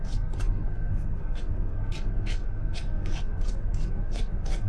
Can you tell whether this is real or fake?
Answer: fake